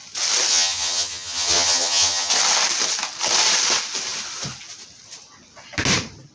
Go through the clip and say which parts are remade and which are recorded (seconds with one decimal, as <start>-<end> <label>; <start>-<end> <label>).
0.0-0.5 recorded; 0.5-2.3 remade; 2.3-6.3 recorded